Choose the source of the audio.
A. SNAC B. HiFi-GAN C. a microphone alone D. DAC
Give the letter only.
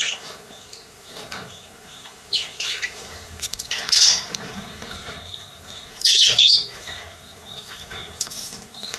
A